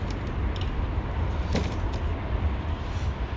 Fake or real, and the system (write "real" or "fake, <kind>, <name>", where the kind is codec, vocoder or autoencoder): real